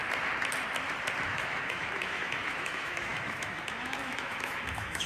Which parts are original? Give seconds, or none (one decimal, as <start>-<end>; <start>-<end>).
0.0-1.3